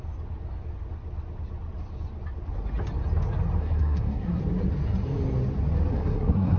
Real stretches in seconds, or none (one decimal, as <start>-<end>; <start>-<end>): 0.0-3.6; 4.4-5.9

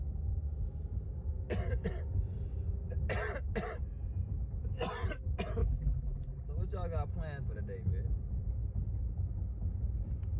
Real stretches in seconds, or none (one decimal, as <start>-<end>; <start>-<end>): 0.0-5.6; 6.5-10.4

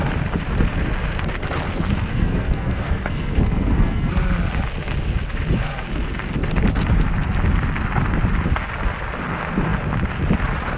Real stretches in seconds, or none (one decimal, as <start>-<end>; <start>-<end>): 0.0-2.1; 4.1-10.8

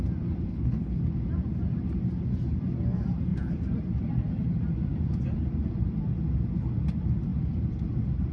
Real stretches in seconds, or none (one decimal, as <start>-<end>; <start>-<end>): 0.0-0.5; 1.0-8.3